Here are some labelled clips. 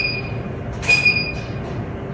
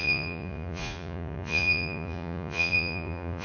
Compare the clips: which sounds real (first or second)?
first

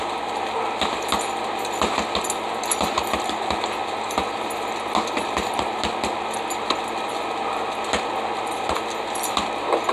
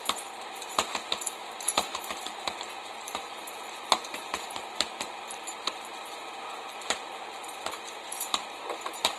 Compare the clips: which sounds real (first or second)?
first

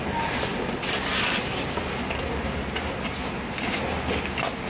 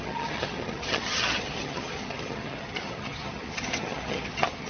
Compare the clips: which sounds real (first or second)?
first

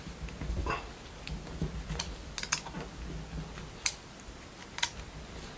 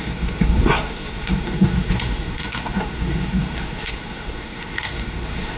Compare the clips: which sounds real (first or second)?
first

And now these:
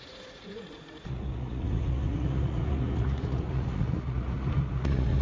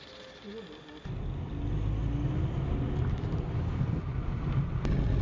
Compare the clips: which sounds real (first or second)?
second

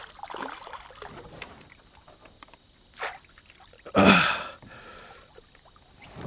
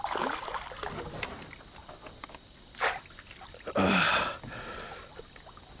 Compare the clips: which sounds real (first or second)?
second